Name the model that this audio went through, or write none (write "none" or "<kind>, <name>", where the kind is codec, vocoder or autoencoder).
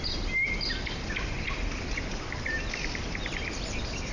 none